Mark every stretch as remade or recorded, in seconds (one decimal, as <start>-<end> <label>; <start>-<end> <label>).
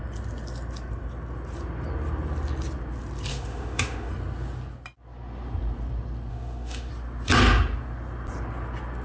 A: 0.0-3.3 recorded; 3.3-4.1 remade; 4.1-6.3 recorded; 6.3-6.9 remade; 6.9-9.0 recorded